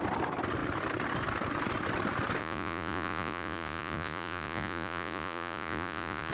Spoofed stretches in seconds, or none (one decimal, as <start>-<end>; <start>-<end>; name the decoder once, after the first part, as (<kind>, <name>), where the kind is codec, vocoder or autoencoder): 2.4-6.3 (vocoder, Vocos)